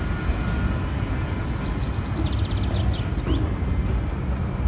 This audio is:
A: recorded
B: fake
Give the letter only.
A